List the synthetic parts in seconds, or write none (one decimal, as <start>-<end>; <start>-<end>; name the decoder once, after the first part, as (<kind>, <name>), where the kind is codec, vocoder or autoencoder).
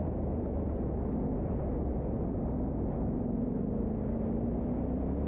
none